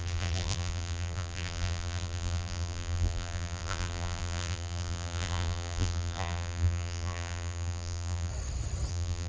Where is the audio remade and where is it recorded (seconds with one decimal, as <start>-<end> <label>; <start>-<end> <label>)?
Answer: 0.0-8.3 remade; 8.3-8.9 recorded; 8.9-9.3 remade